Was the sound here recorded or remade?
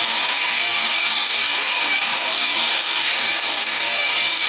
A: remade